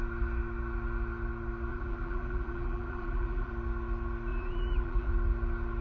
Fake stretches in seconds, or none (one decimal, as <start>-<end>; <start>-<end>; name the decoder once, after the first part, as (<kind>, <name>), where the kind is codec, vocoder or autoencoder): 1.7-3.5 (vocoder, BigVGAN v2); 4.3-5.1